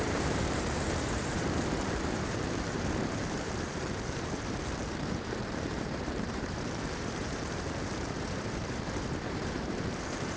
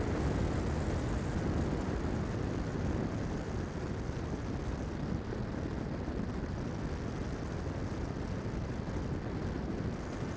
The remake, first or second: first